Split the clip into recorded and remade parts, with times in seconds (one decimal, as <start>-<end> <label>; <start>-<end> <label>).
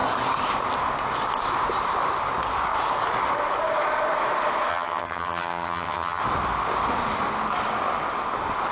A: 0.0-4.7 recorded; 4.7-6.2 remade; 6.2-8.7 recorded